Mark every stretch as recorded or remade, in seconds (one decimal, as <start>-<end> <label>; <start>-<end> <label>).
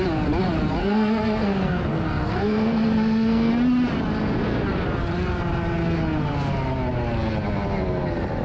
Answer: 0.0-0.8 recorded; 0.8-3.5 remade; 3.5-8.4 recorded